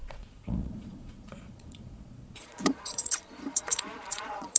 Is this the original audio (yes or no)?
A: no